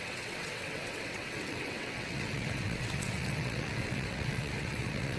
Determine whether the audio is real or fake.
fake